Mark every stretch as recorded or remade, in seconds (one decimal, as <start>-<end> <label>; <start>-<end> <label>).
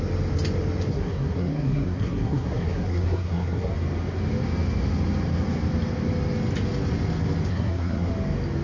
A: 0.0-0.9 recorded; 0.9-3.7 remade; 3.7-7.5 recorded; 7.5-8.1 remade; 8.1-8.6 recorded